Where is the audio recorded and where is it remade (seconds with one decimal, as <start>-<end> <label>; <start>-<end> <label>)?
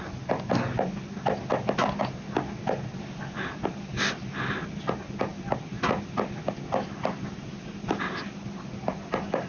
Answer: 0.0-9.5 recorded